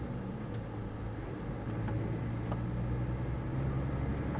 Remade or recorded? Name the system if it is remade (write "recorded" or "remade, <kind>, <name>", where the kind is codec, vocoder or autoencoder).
recorded